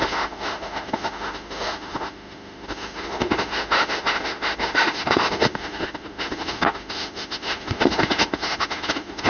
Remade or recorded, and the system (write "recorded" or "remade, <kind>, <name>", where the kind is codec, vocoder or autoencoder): remade, autoencoder, DAC-VAE